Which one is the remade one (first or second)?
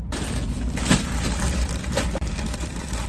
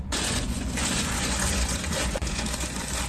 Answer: second